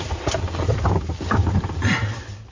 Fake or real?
real